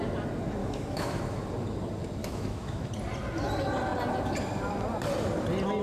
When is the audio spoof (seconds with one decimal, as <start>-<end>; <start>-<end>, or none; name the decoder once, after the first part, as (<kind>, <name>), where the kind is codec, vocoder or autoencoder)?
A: 0.6-1.2 (autoencoder, DAC-VAE); 2.2-2.9